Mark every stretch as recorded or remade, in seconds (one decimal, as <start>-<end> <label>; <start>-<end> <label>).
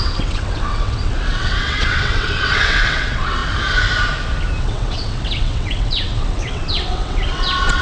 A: 0.0-3.4 remade; 3.4-4.6 recorded; 4.6-7.8 remade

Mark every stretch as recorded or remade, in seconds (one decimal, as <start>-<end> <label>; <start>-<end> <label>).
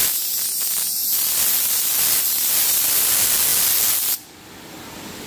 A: 0.0-5.3 recorded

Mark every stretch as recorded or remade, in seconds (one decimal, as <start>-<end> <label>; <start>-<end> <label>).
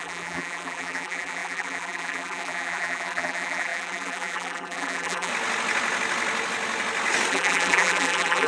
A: 0.0-5.3 remade; 5.3-7.3 recorded; 7.3-8.5 remade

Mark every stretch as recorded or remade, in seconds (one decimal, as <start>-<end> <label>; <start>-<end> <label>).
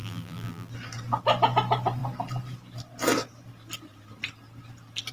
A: 0.0-0.7 remade; 0.7-5.1 recorded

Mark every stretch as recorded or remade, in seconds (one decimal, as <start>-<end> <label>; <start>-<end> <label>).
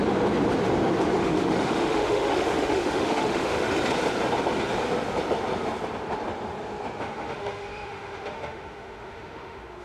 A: 0.0-1.2 recorded; 1.2-3.7 remade; 3.7-7.0 recorded; 7.0-9.8 remade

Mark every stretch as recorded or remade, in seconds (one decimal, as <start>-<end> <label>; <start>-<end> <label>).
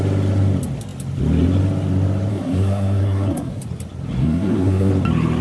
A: 0.0-2.3 recorded; 2.3-3.6 remade; 3.6-4.2 recorded; 4.2-4.9 remade; 4.9-5.4 recorded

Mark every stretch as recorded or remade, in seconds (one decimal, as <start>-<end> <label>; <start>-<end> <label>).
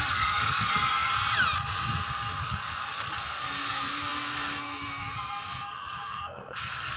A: 0.0-1.1 remade; 1.1-2.4 recorded; 2.4-7.0 remade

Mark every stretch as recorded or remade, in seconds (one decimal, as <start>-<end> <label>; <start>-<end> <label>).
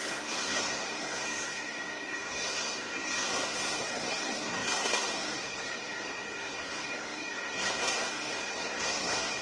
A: 0.0-9.4 remade